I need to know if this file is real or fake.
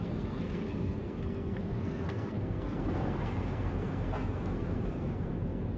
fake